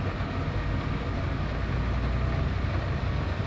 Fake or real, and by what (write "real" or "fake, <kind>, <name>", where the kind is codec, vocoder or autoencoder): real